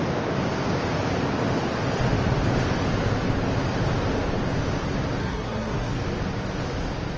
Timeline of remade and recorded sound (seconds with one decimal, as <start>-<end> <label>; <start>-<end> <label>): 0.0-5.2 recorded; 5.2-6.0 remade; 6.0-7.2 recorded